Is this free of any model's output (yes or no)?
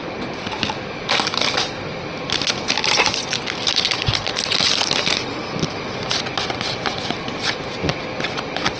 yes